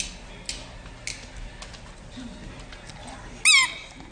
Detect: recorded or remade recorded